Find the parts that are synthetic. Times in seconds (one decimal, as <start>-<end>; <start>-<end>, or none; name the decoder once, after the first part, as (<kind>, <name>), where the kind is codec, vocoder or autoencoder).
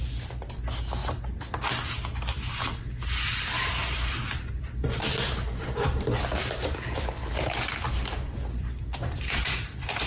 0.0-1.0 (vocoder, BigVGAN v2); 2.3-7.2; 7.8-10.1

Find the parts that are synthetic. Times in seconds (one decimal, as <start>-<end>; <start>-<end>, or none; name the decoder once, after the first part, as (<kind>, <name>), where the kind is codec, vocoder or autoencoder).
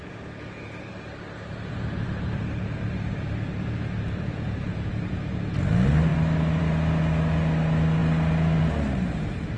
0.9-5.6 (vocoder, BigVGAN v2)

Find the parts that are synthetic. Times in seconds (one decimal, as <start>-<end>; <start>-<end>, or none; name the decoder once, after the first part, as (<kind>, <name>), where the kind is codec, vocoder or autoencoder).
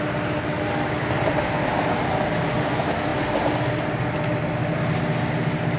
none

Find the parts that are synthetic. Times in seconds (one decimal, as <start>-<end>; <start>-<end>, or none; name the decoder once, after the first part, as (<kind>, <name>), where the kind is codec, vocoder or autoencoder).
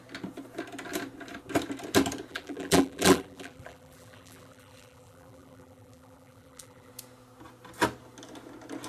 2.3-6.9 (vocoder, BigVGAN v2)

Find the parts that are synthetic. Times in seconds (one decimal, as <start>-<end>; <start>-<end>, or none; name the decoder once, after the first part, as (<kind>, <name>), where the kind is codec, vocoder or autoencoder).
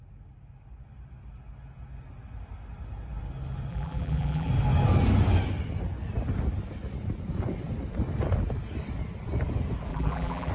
3.7-4.5 (vocoder, BigVGAN v2); 9.9-10.5